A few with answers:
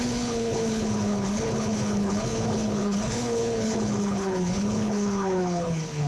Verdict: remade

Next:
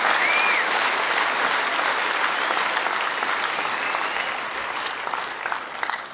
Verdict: recorded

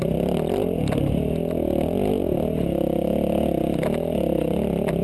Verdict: recorded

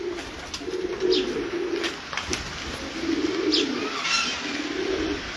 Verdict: recorded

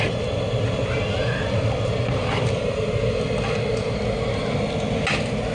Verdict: recorded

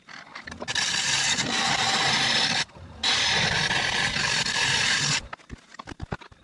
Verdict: recorded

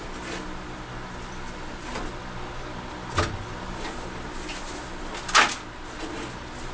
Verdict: recorded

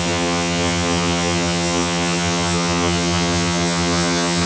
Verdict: remade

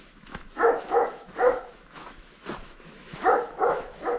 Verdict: remade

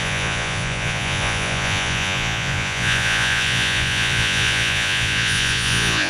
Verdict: remade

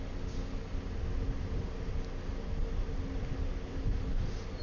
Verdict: recorded